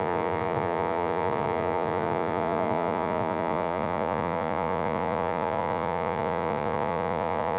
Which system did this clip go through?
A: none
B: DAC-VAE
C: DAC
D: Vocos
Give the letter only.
D